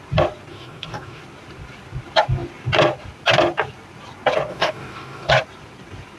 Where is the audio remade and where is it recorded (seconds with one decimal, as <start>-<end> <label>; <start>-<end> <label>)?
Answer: 0.0-0.5 recorded; 0.5-1.2 remade; 1.2-4.5 recorded; 4.5-5.3 remade; 5.3-6.2 recorded